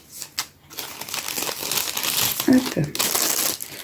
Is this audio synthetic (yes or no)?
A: no